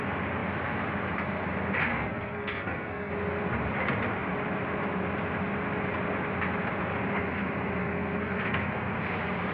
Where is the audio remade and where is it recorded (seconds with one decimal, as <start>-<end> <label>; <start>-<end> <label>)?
0.0-1.9 recorded; 1.9-3.1 remade; 3.1-7.8 recorded; 7.8-8.7 remade; 8.7-9.5 recorded